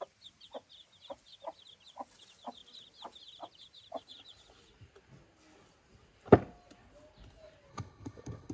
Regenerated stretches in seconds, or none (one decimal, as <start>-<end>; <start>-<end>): 7.7-8.5